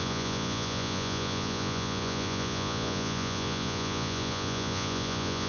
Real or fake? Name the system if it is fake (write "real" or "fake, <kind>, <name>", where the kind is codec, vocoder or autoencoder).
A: fake, vocoder, Vocos